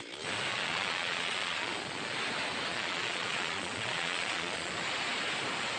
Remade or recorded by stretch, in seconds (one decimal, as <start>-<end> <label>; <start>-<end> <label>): 0.0-0.5 recorded; 0.5-1.7 remade; 1.7-2.7 recorded; 2.7-4.7 remade; 4.7-5.8 recorded